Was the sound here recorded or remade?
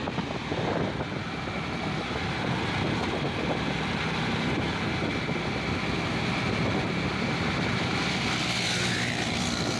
recorded